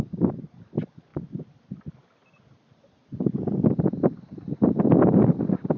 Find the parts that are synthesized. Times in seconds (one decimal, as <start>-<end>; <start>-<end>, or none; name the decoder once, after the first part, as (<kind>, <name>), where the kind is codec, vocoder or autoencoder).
0.0-2.2 (vocoder, BigVGAN v2)